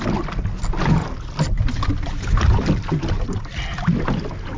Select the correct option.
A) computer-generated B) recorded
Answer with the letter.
B